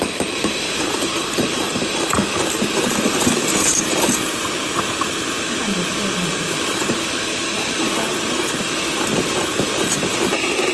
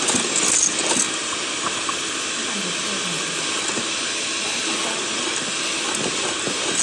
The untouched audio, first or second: second